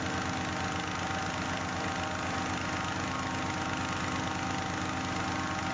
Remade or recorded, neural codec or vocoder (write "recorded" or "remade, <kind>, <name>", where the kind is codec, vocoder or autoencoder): recorded